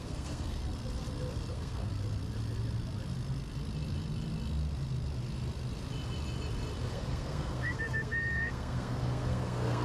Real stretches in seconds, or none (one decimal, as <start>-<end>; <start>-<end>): 0.6-1.5; 1.9-6.9